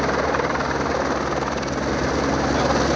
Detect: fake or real real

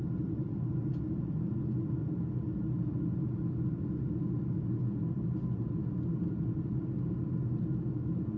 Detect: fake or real real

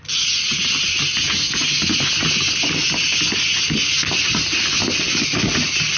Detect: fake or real real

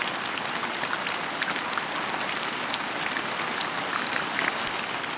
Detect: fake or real real